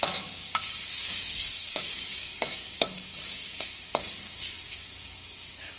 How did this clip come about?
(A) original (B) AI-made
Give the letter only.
B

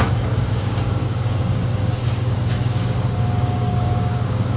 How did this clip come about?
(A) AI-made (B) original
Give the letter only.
A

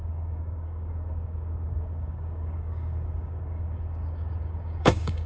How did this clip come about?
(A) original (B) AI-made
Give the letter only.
B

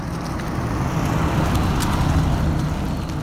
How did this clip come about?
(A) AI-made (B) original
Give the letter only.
B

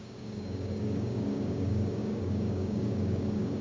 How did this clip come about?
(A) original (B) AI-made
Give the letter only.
B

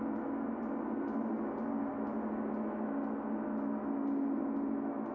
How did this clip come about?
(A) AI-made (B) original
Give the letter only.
B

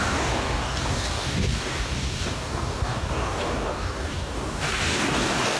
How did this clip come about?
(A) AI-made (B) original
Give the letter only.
A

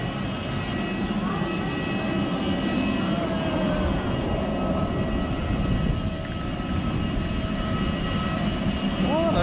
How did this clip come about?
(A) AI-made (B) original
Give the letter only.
B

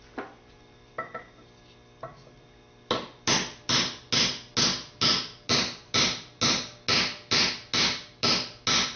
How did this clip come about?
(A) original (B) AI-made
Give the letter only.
A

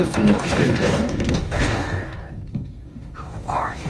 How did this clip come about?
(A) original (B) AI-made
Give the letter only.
B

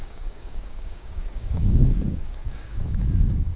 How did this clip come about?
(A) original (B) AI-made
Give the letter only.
B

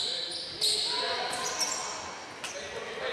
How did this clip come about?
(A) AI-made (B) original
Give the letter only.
B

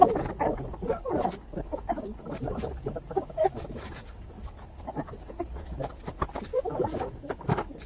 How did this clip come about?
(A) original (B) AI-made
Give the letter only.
B